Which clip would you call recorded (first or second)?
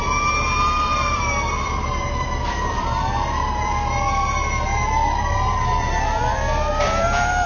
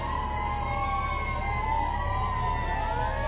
second